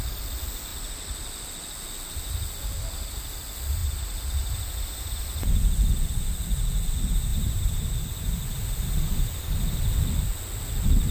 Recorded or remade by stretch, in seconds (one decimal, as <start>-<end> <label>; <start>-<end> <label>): 0.0-3.8 recorded; 3.8-5.2 remade; 5.2-7.3 recorded; 7.3-8.0 remade; 8.0-11.1 recorded